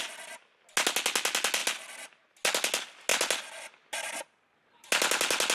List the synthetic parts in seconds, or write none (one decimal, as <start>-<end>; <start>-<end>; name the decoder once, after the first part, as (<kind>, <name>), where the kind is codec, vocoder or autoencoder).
none